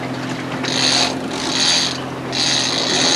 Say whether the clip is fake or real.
real